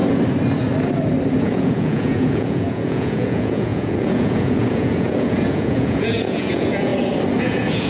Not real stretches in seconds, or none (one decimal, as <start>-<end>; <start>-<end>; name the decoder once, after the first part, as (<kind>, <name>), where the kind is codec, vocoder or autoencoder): 1.4-6.9 (vocoder, Vocos); 7.4-7.9